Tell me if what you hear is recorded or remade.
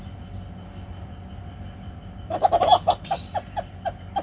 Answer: recorded